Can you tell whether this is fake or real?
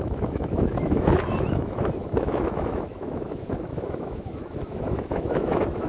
fake